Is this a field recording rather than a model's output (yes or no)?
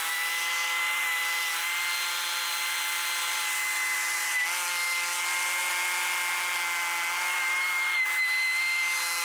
yes